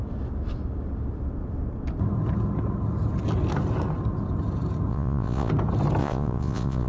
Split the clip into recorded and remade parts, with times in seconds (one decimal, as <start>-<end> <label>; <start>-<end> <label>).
0.0-4.9 recorded; 4.9-5.5 remade; 5.5-6.0 recorded; 6.0-6.9 remade